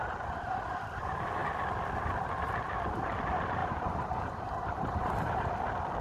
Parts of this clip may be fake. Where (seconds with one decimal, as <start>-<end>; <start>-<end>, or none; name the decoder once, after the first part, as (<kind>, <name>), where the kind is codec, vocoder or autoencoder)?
3.6-5.5 (vocoder, BigVGAN v2)